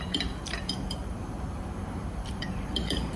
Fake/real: fake